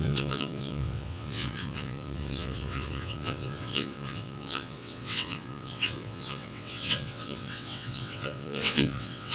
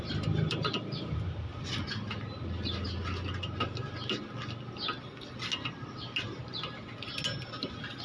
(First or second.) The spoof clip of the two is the first